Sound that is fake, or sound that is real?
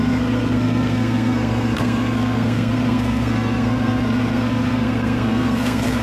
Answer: fake